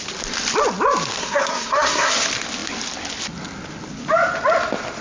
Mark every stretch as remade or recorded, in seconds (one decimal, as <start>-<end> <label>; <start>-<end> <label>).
0.0-1.2 recorded; 1.2-2.1 remade; 2.1-5.0 recorded